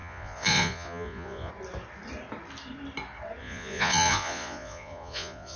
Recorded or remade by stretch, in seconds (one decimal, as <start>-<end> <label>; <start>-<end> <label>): 0.0-1.5 remade; 1.5-3.4 recorded; 3.4-5.6 remade